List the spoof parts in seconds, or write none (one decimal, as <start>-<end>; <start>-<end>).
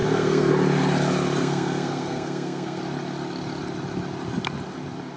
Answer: 0.0-0.5; 1.4-2.8